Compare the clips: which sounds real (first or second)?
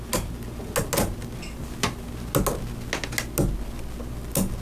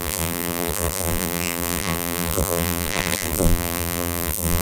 first